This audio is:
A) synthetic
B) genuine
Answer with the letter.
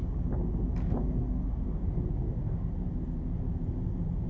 B